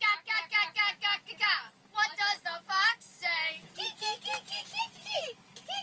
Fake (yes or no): no